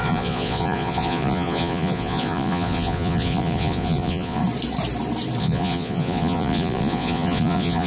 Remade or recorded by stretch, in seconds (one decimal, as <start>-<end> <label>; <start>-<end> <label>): 0.0-4.4 remade; 4.4-5.4 recorded; 5.4-7.9 remade